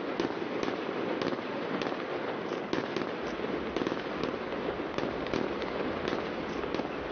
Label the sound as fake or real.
real